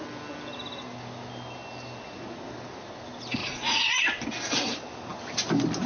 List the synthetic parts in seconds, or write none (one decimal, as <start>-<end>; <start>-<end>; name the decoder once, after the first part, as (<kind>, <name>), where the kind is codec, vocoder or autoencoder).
3.4-4.0 (vocoder, Vocos)